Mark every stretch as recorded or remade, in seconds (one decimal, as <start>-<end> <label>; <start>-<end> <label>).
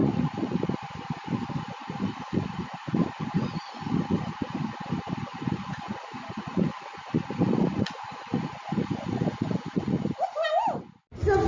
0.0-0.7 remade; 0.7-1.8 recorded; 1.8-4.8 remade; 4.8-5.3 recorded; 5.3-10.0 remade; 10.0-11.5 recorded